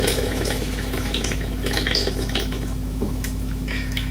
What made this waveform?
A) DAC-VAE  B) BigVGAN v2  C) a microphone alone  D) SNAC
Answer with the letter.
A